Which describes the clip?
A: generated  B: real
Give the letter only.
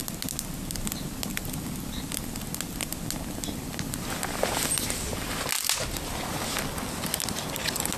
B